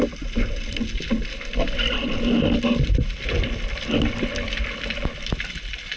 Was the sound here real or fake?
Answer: real